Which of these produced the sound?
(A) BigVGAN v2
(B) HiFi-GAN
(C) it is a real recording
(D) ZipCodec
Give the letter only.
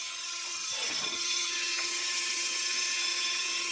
B